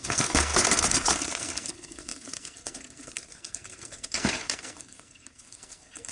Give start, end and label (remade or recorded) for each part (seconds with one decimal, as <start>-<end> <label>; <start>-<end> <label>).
0.0-6.1 remade